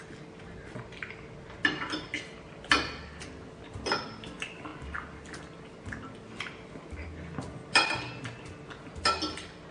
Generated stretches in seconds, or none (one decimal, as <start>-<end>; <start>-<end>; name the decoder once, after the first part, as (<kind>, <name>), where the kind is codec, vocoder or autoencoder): none